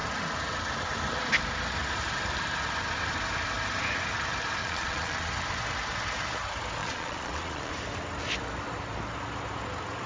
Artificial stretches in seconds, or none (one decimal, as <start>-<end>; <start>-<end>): 4.6-5.3; 6.8-7.7